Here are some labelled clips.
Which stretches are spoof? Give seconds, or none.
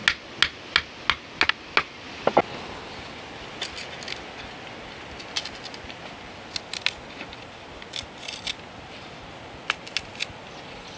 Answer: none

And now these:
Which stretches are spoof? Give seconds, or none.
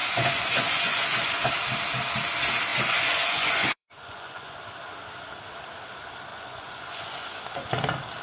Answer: 0.0-1.5 (vocoder, Vocos); 2.7-4.6; 6.3-7.4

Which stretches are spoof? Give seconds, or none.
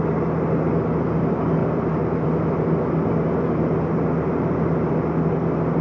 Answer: none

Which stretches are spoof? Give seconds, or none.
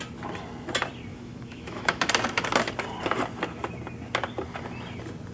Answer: 1.1-2.0 (autoencoder, DAC-VAE)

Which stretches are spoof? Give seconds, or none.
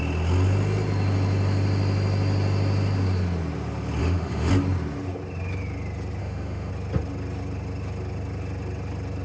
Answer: 4.0-4.5 (autoencoder, DAC-VAE); 6.2-6.7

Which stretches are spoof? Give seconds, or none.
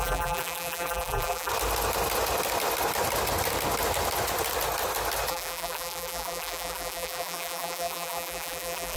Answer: 0.0-1.5 (vocoder, BigVGAN v2); 5.3-9.0